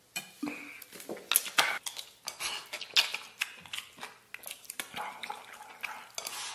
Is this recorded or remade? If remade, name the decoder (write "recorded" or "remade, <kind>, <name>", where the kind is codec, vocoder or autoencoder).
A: recorded